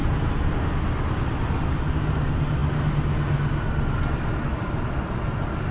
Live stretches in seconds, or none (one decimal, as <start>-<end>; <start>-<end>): 0.0-5.7